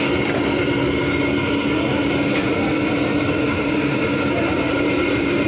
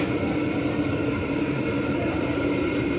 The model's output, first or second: second